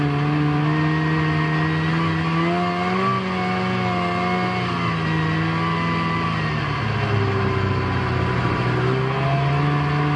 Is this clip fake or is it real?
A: real